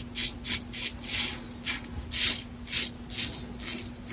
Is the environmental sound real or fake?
real